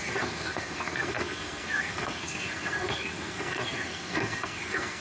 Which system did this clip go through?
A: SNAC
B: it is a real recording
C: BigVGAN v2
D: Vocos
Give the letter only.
A